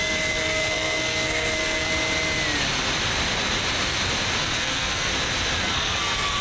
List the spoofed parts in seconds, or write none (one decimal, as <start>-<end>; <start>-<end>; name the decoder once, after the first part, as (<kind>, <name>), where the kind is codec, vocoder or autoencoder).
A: 0.0-1.9 (codec, SNAC); 4.4-5.1; 5.6-6.4